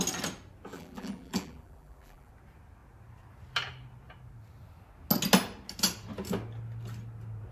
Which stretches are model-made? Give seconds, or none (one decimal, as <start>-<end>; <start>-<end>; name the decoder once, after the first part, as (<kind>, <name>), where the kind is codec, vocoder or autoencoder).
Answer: 0.7-2.3 (vocoder, BigVGAN v2)